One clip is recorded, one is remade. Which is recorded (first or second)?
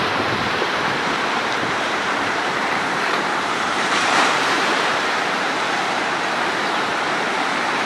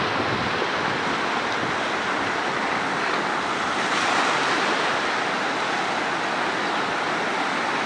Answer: second